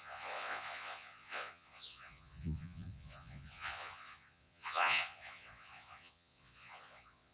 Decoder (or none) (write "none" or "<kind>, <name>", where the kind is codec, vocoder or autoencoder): vocoder, Vocos